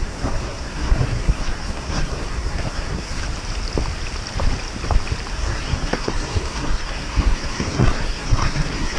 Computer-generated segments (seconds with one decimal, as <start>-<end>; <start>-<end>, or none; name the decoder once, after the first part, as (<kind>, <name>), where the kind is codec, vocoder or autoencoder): 0.0-3.2 (codec, SNAC); 5.3-9.0